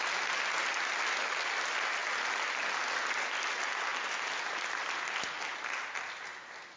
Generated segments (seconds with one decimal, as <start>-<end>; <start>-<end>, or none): none